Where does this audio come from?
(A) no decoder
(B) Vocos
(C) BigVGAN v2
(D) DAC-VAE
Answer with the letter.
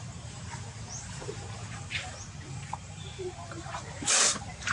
C